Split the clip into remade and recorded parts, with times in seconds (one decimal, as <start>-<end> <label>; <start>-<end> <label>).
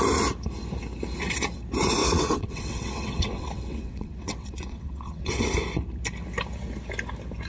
0.0-2.0 recorded; 2.0-5.4 remade; 5.4-7.5 recorded